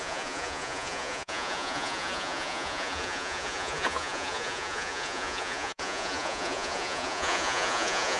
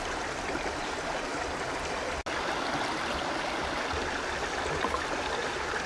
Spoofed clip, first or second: first